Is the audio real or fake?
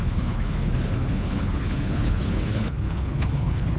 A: fake